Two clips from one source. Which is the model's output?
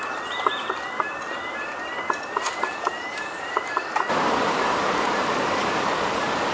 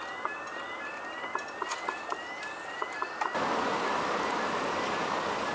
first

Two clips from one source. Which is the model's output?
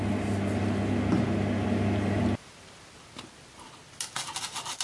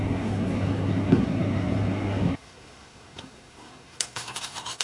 second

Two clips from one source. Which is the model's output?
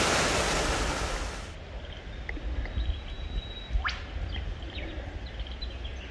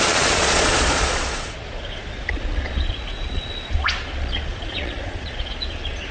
second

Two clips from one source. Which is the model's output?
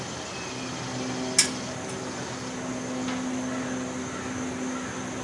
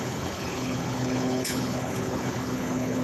second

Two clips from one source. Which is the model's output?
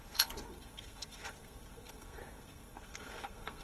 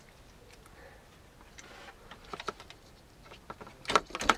first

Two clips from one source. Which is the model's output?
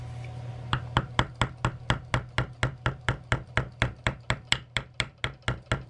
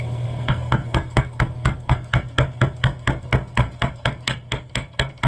second